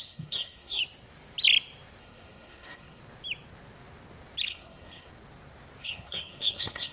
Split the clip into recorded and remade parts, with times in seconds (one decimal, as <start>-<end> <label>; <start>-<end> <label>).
0.0-0.8 remade; 0.8-2.0 recorded; 2.0-3.0 remade; 3.0-4.5 recorded; 4.5-5.1 remade; 5.1-5.8 recorded; 5.8-6.9 remade